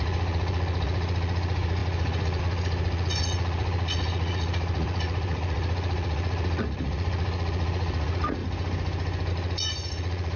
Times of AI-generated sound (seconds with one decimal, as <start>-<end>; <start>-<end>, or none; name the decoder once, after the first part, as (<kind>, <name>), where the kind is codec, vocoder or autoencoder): 0.0-8.4 (vocoder, Vocos); 9.3-10.4